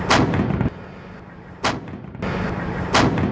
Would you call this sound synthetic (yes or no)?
no